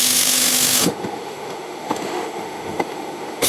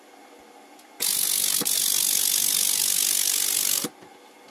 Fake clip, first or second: first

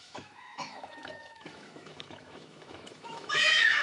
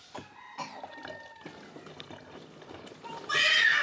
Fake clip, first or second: first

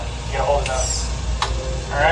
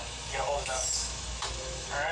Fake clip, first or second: second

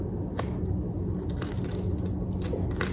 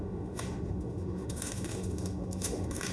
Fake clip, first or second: second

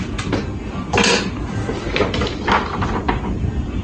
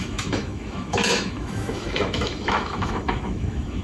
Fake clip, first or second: second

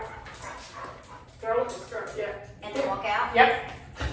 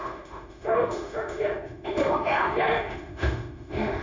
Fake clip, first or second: second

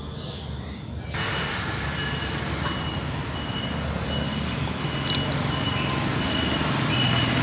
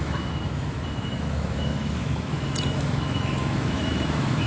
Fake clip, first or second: second